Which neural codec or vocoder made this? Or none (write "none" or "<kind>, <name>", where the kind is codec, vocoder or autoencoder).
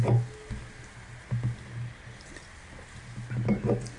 none